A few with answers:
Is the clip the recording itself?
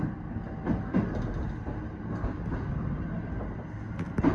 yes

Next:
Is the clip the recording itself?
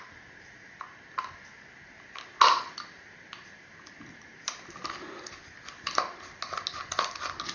yes